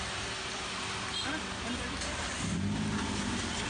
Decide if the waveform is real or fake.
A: real